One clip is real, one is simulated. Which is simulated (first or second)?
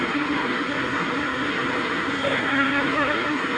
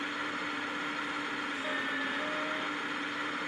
first